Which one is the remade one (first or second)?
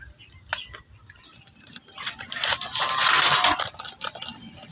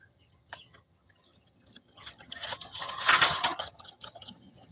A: second